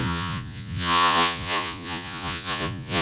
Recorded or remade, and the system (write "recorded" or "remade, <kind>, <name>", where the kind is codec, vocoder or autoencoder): remade, vocoder, Vocos